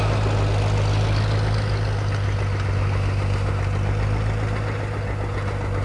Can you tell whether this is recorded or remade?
recorded